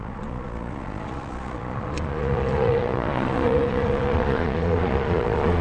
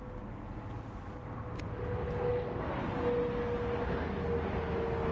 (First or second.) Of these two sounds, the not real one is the first